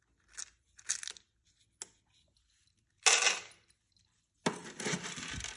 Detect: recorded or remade recorded